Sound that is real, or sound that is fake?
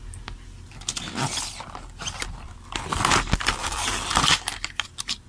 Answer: real